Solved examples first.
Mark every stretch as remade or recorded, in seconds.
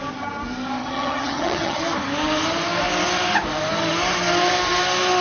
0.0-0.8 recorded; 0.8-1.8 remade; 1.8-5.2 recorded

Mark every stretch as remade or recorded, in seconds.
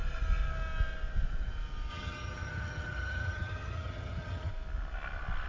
0.0-1.9 recorded; 1.9-4.5 remade; 4.5-5.5 recorded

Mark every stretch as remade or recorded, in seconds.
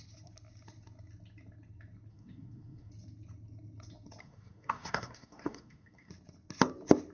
0.0-2.1 recorded; 2.1-2.9 remade; 2.9-4.2 recorded; 4.2-6.1 remade; 6.1-7.1 recorded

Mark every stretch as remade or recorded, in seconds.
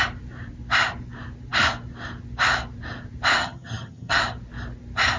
0.0-3.4 recorded; 3.4-4.2 remade; 4.2-5.2 recorded